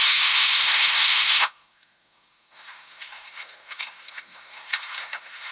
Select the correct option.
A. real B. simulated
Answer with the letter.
B